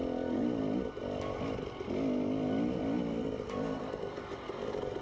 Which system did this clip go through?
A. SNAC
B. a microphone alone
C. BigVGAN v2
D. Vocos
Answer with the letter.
B